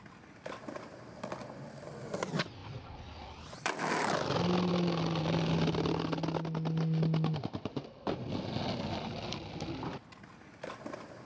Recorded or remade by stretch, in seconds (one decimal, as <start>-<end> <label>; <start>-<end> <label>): 0.0-11.3 recorded